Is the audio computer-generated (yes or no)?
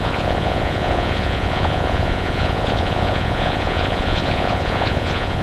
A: yes